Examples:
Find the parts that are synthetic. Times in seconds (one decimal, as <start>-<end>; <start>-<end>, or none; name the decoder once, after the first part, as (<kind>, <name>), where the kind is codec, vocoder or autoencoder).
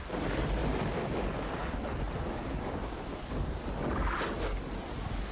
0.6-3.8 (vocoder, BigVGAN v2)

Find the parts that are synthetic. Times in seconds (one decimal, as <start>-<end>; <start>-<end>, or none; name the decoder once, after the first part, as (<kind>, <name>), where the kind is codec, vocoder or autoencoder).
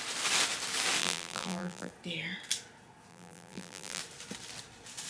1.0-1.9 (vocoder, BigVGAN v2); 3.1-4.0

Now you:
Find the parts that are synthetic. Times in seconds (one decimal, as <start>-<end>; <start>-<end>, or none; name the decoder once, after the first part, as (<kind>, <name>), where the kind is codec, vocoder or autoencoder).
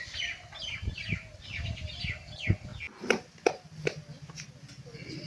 0.5-2.2 (vocoder, BigVGAN v2)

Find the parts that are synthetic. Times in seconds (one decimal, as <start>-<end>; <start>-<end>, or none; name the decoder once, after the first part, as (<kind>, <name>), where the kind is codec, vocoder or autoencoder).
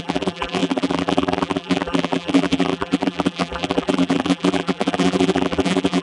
0.0-6.0 (vocoder, BigVGAN v2)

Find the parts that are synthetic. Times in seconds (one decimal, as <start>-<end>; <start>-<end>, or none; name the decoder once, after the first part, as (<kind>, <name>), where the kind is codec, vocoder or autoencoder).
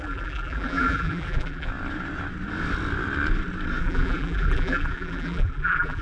0.0-1.7 (vocoder, BigVGAN v2); 3.8-6.0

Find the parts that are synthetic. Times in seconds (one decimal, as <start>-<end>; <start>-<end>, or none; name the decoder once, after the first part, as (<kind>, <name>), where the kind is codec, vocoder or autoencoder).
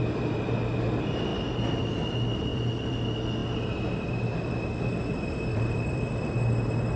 2.5-3.0 (vocoder, BigVGAN v2); 5.5-6.3